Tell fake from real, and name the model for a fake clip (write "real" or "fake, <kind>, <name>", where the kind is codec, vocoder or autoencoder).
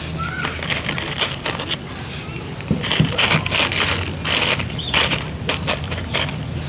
real